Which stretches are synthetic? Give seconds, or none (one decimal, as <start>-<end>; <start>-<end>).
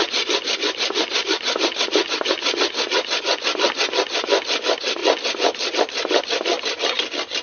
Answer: none